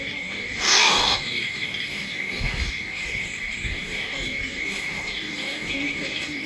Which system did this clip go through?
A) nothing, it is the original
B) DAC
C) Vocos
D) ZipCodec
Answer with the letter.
B